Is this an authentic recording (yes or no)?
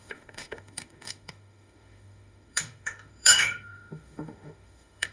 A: no